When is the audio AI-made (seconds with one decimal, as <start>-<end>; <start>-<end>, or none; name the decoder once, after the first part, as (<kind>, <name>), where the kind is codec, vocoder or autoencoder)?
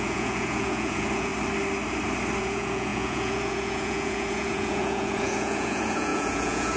0.0-1.3 (vocoder, Vocos); 2.4-6.8